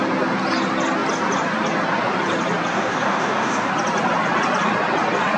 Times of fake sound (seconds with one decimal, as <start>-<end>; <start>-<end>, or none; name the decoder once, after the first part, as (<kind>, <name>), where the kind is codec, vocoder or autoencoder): 2.7-3.7 (codec, DAC)